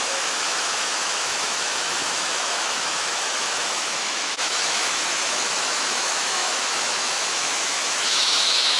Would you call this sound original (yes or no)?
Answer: no